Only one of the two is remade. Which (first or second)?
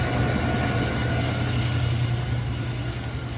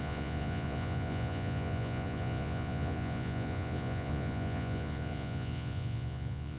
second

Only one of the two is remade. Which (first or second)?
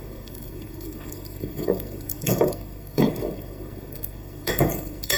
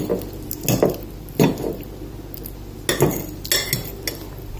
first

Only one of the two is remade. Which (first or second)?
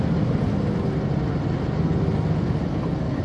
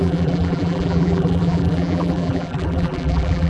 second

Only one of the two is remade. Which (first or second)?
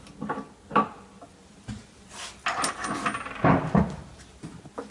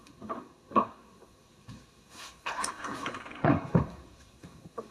second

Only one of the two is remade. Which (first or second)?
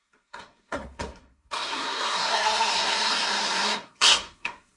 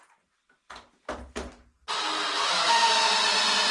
first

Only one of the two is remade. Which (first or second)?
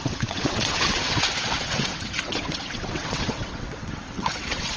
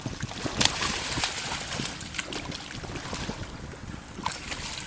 first